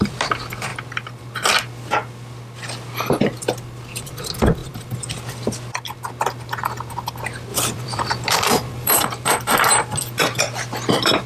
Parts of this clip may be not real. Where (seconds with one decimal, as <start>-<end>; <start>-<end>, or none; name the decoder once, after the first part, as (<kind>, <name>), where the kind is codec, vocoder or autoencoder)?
7.5-8.9 (vocoder, BigVGAN v2)